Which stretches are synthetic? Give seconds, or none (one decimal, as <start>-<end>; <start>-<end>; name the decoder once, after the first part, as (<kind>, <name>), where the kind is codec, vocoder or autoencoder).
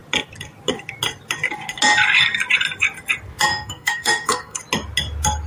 3.5-4.6 (codec, SNAC)